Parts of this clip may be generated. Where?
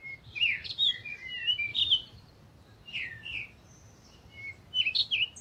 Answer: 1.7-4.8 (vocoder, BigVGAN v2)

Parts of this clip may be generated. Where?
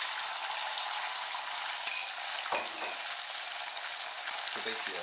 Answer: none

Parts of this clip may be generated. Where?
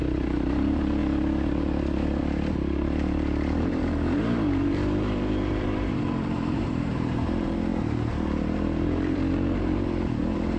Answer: 0.0-1.0 (vocoder, BigVGAN v2); 2.2-10.6